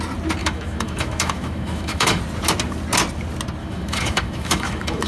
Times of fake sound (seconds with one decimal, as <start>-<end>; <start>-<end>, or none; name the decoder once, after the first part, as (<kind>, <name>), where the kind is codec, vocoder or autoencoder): 0.4-2.2 (autoencoder, DAC-VAE); 3.6-5.1

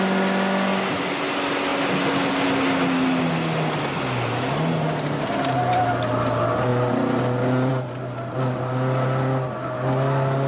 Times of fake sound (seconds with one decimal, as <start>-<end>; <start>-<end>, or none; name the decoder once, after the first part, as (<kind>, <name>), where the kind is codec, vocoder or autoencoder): none

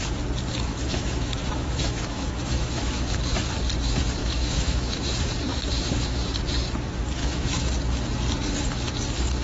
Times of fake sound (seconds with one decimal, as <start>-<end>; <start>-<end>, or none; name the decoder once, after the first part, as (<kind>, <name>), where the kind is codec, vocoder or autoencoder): 0.7-3.2 (autoencoder, DAC-VAE); 4.2-5.0; 5.5-6.3; 7.2-7.7

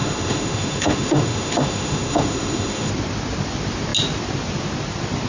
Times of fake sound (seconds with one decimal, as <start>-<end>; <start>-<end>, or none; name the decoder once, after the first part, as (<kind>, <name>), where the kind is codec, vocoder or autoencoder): 0.0-2.9 (autoencoder, DAC-VAE)